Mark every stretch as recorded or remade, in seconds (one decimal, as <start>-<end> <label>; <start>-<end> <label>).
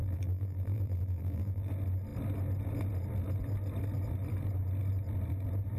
0.0-1.7 remade; 1.7-5.8 recorded